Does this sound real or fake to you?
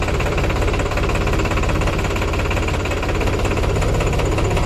fake